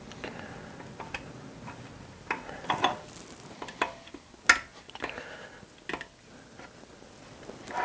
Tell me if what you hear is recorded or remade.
recorded